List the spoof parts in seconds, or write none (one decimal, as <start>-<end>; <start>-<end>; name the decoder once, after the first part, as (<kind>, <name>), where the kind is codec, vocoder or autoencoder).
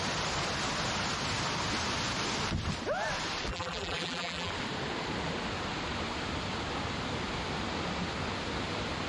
3.5-4.5 (vocoder, BigVGAN v2)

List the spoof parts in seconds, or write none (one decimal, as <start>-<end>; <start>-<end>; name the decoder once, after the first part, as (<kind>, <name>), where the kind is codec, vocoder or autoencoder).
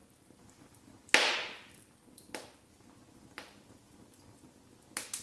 none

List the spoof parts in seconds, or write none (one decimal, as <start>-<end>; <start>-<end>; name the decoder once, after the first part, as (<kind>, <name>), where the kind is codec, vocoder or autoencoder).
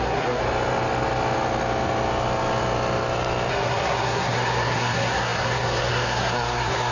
0.0-0.4 (codec, SNAC); 3.5-6.9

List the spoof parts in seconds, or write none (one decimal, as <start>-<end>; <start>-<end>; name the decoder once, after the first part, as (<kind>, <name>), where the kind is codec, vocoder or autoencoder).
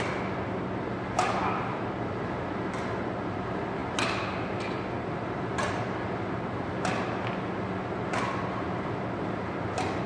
none